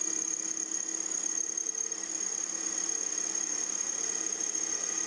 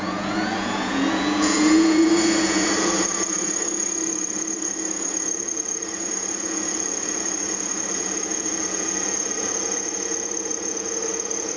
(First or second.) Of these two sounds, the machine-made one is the second